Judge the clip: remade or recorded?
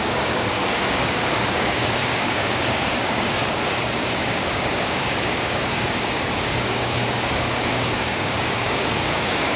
remade